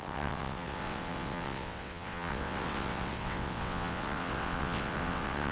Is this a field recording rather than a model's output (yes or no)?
no